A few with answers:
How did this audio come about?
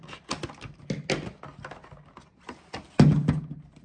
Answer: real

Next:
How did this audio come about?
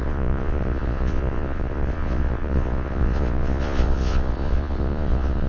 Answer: fake